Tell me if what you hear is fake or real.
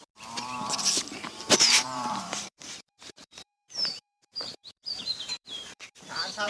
fake